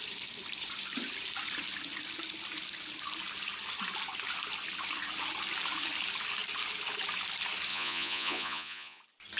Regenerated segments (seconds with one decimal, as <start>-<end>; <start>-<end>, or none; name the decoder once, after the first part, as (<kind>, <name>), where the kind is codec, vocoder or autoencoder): 7.7-9.0 (vocoder, Vocos)